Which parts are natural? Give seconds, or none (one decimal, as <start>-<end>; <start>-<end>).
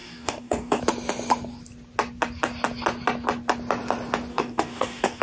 0.8-4.3